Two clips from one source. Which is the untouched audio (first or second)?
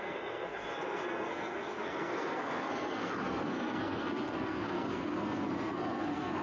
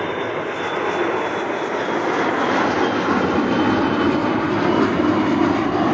second